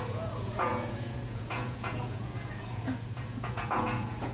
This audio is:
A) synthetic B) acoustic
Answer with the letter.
A